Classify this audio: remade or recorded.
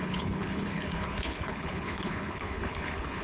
remade